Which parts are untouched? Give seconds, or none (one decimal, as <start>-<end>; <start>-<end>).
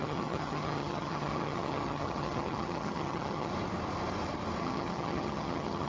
3.5-4.6